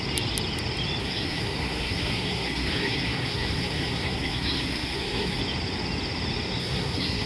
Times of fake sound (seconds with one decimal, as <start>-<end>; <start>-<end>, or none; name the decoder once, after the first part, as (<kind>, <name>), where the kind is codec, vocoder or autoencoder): 1.0-5.4 (codec, SNAC); 6.6-7.3